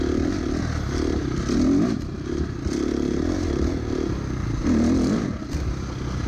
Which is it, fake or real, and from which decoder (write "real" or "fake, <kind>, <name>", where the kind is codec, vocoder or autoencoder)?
real